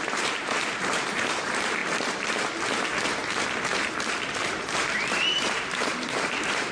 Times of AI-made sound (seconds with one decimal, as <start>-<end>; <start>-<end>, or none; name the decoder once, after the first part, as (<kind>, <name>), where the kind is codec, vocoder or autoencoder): 0.0-1.8 (vocoder, BigVGAN v2); 3.0-6.7